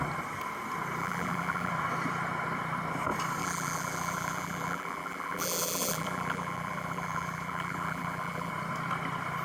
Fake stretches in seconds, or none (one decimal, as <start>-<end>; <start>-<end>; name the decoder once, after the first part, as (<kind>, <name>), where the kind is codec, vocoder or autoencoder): 1.0-1.7 (vocoder, BigVGAN v2); 3.4-8.5